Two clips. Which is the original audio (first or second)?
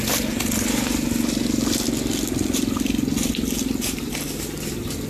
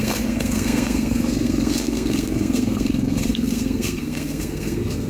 first